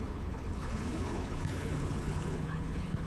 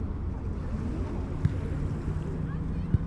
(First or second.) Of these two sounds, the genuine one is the second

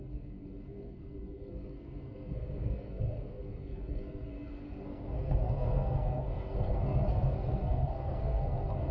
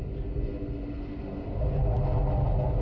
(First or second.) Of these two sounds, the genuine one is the second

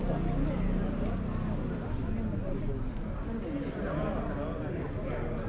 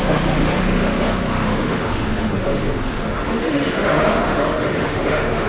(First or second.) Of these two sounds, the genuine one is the first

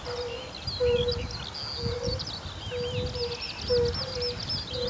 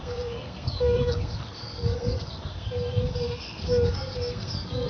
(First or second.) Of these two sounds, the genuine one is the first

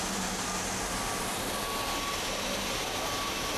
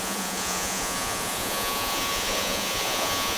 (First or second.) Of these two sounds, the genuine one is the first